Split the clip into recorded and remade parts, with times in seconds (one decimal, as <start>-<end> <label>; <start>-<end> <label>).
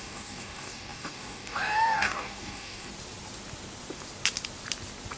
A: 0.0-2.9 remade; 2.9-5.2 recorded